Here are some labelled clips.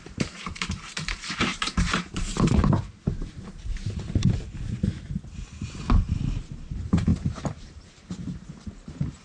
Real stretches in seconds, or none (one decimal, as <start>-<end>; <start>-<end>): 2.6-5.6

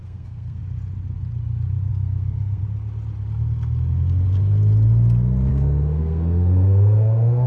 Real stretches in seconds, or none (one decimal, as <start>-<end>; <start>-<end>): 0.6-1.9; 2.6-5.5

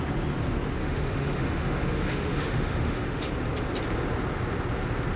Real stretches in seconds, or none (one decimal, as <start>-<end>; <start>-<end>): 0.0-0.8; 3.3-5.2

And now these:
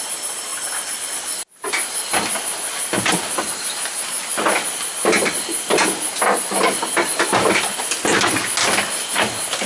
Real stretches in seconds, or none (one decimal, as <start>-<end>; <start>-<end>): 0.0-9.7